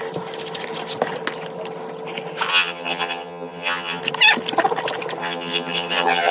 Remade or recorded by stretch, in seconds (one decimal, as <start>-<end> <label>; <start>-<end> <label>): 0.0-2.5 recorded; 2.5-4.0 remade; 4.0-5.2 recorded; 5.2-6.3 remade

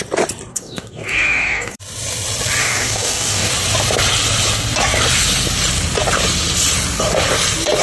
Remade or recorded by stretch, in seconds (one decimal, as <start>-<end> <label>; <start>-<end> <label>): 0.0-0.5 recorded; 0.5-1.8 remade; 1.8-2.6 recorded; 2.6-3.5 remade; 3.5-7.8 recorded

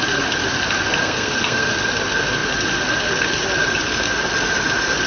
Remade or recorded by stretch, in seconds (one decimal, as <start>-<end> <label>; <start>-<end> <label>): 0.0-1.0 recorded; 1.0-1.7 remade; 1.7-5.1 recorded